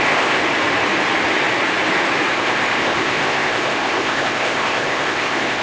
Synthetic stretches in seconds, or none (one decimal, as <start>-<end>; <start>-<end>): 0.0-0.4; 2.3-5.6